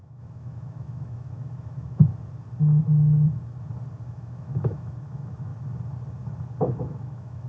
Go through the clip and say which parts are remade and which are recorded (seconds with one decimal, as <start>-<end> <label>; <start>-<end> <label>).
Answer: 0.0-2.1 remade; 2.1-4.1 recorded; 4.1-5.5 remade; 5.5-6.6 recorded; 6.6-7.5 remade